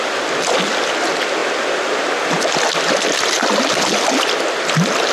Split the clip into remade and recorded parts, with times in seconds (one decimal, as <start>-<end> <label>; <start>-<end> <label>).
0.0-5.1 recorded